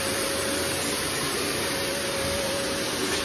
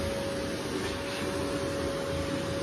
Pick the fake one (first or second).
first